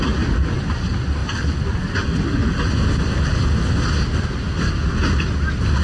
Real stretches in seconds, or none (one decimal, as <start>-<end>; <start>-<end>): 0.0-5.8